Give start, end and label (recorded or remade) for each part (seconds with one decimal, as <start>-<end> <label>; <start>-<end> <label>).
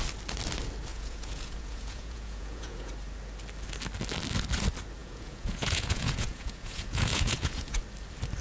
0.0-0.9 recorded; 0.9-2.9 remade; 2.9-5.0 recorded; 5.0-7.8 remade; 7.8-8.4 recorded